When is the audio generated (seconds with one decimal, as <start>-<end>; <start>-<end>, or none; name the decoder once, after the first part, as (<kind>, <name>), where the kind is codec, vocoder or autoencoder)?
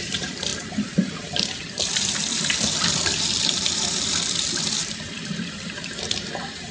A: 0.0-6.7 (vocoder, BigVGAN v2)